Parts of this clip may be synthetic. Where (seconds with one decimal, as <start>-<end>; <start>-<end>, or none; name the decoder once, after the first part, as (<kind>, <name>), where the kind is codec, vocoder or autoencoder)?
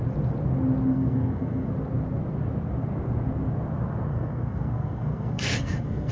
0.9-1.7 (codec, SNAC); 4.1-6.1